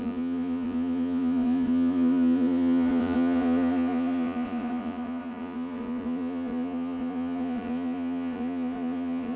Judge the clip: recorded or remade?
remade